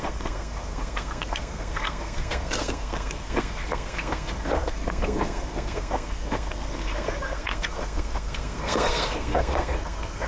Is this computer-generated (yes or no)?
yes